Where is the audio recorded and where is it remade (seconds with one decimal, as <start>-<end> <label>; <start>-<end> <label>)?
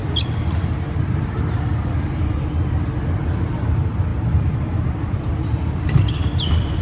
0.0-6.8 recorded